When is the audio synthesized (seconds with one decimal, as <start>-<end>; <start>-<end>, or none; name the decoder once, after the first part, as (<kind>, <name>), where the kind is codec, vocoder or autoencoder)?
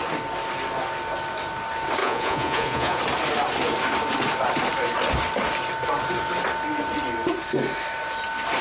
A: 2.0-3.0 (vocoder, Vocos)